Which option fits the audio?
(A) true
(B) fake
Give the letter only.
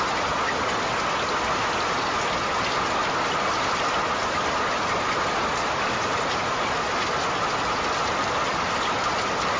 A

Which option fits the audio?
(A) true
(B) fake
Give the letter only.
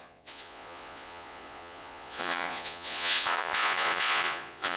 B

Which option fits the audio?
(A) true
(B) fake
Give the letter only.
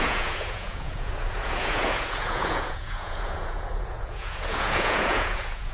B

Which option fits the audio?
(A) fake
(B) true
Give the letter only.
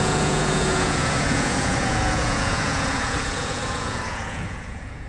A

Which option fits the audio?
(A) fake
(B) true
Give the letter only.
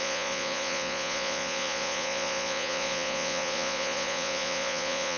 A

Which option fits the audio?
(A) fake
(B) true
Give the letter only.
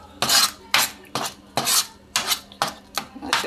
B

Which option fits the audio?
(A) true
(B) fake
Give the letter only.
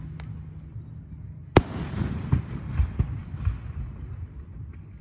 A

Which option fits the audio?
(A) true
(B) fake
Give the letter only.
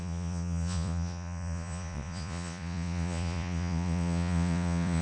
B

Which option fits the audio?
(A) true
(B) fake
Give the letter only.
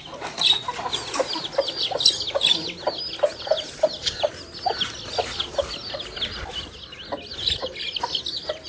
A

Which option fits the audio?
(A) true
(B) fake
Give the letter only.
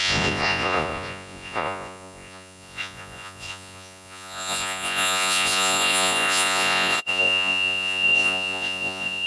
B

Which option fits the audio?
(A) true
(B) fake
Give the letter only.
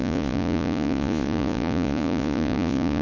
B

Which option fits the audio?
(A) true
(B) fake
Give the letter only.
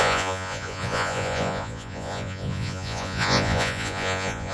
B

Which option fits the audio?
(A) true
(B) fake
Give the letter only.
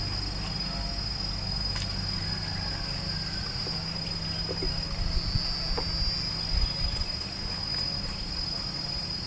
A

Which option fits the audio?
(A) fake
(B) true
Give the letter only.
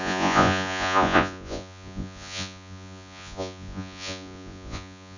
A